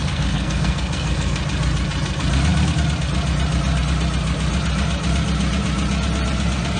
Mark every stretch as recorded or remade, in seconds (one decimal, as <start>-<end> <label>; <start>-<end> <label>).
0.0-1.4 remade; 1.4-6.8 recorded